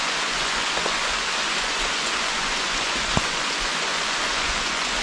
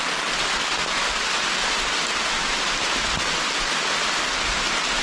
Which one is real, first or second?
second